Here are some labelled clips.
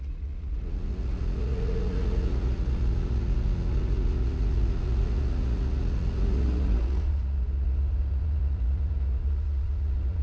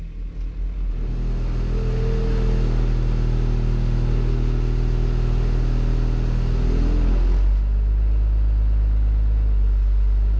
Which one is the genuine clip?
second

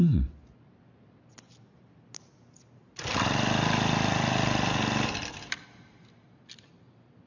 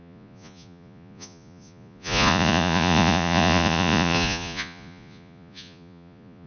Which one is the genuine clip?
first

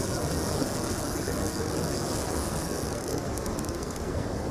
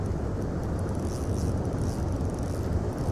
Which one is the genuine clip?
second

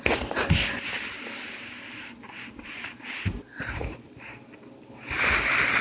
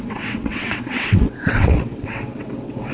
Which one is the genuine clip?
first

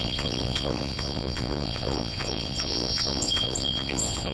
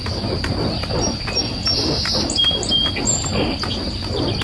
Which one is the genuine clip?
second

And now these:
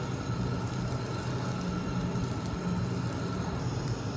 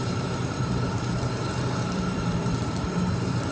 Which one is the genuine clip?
first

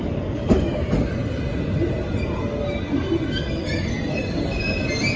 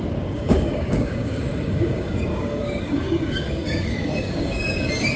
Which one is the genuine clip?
first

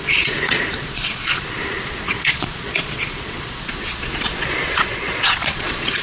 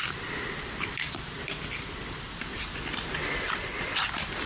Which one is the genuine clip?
second